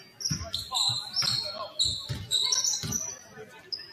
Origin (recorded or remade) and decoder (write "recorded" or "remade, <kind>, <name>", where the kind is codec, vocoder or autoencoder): recorded